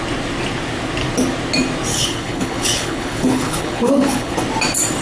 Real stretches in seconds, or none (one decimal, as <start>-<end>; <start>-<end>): 0.0-1.9; 4.4-5.0